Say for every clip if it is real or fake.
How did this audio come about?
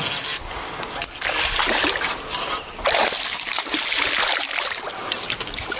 real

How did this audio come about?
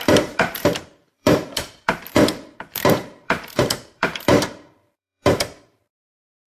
fake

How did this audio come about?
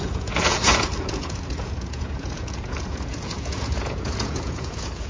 fake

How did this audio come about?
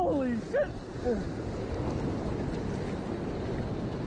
real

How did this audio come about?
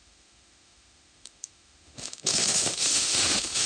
fake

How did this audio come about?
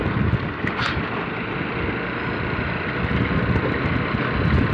real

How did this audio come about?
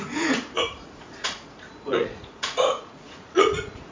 fake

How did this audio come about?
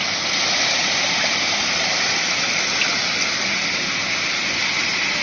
real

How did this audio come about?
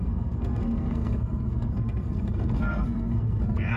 fake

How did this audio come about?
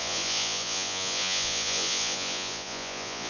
fake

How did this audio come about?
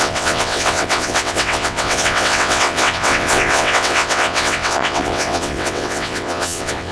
fake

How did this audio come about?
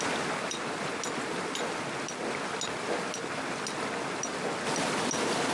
real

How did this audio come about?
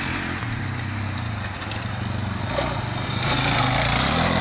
real